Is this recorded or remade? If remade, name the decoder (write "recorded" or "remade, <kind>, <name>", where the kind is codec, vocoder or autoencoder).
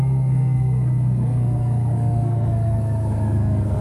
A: remade, codec, SNAC